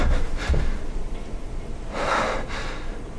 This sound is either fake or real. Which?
real